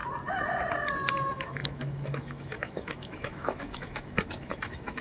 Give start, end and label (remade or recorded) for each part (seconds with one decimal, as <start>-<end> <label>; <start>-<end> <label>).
0.0-1.1 recorded; 1.1-5.0 remade